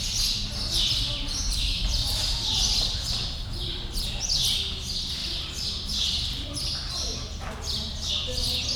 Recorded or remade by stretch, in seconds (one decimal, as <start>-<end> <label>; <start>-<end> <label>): 0.0-1.1 recorded; 1.1-3.9 remade; 3.9-5.2 recorded; 5.2-8.1 remade; 8.1-8.8 recorded